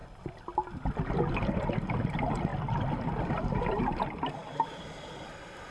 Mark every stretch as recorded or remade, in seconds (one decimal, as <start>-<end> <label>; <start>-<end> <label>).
0.0-1.3 recorded; 1.3-2.5 remade; 2.5-3.6 recorded; 3.6-4.4 remade; 4.4-5.7 recorded